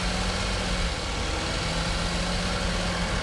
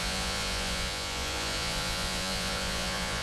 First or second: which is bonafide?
first